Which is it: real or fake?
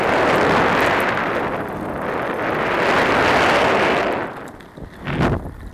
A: real